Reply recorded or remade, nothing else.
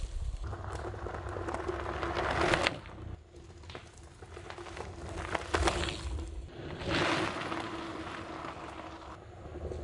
recorded